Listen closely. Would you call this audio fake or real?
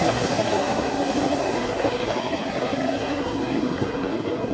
fake